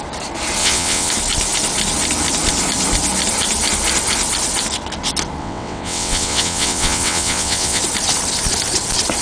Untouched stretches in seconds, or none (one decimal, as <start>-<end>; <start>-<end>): 0.0-0.6; 1.1-5.4; 7.8-9.2